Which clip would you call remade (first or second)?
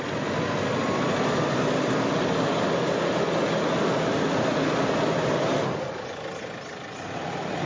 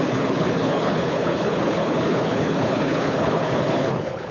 second